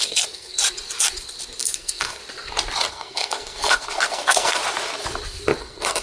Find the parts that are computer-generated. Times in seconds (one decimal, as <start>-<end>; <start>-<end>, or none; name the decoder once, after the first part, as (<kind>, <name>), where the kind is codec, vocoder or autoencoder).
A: 0.0-0.6 (codec, SNAC); 1.6-2.2; 2.9-4.6; 5.6-6.0